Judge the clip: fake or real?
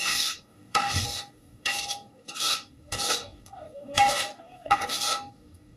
fake